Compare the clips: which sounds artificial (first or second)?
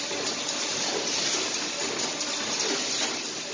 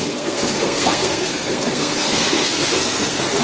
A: second